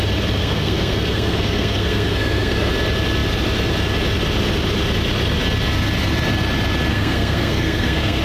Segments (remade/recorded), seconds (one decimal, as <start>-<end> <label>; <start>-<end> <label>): 0.0-0.4 recorded; 0.4-2.7 remade; 2.7-6.9 recorded; 6.9-8.2 remade